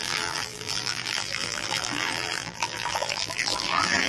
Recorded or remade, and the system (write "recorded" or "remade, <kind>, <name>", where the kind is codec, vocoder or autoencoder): remade, vocoder, BigVGAN v2